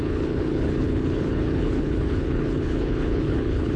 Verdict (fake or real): fake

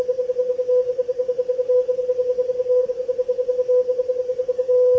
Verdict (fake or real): real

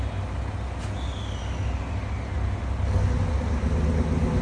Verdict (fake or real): real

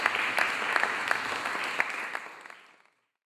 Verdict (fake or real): real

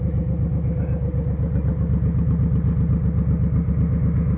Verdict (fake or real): real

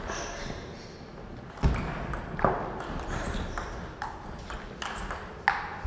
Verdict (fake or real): real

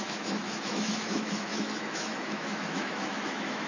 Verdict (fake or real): fake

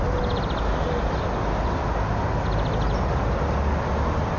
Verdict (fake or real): real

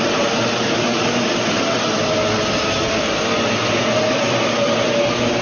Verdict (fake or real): real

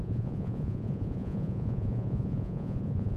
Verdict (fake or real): fake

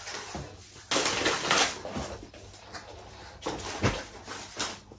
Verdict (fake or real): real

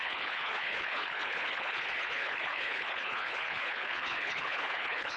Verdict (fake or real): fake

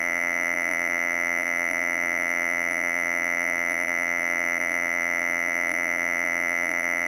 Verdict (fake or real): fake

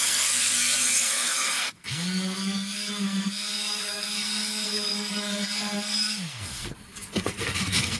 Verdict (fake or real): fake